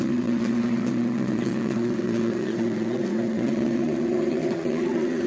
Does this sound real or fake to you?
fake